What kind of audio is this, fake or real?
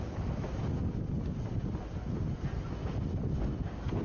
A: real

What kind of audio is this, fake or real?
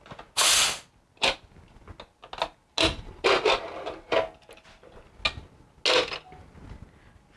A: real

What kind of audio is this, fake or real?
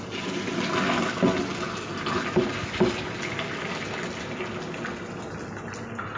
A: real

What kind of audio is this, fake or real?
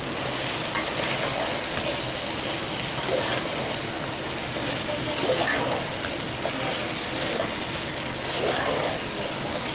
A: real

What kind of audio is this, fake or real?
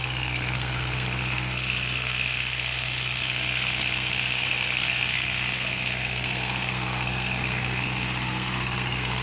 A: fake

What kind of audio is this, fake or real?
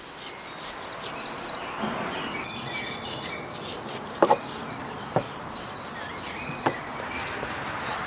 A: real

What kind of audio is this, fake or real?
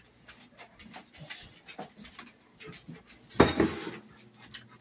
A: real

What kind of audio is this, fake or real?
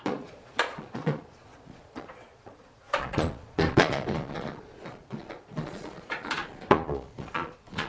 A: fake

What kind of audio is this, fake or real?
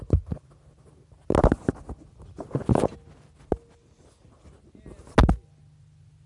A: real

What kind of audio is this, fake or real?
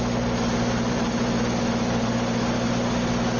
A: real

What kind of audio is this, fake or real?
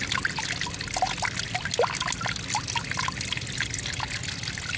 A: real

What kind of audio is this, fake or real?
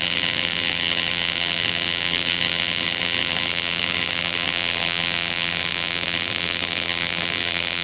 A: fake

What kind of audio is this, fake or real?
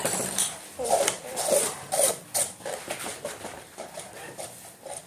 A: fake